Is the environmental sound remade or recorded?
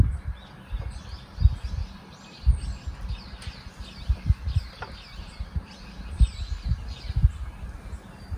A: recorded